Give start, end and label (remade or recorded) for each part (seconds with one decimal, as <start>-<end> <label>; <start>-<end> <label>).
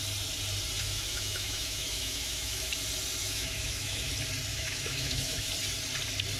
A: 0.0-0.8 recorded; 0.8-2.7 remade; 2.7-3.2 recorded; 3.2-4.1 remade; 4.1-4.5 recorded; 4.5-5.5 remade; 5.5-6.4 recorded